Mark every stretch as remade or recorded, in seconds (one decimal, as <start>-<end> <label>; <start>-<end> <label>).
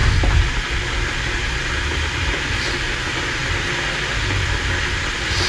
0.0-5.5 recorded